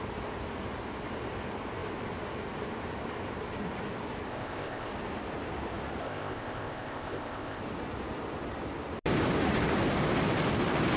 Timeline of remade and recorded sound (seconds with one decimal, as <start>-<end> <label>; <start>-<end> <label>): 0.0-4.3 recorded; 4.3-4.9 remade; 4.9-6.0 recorded; 6.0-7.6 remade; 7.6-11.0 recorded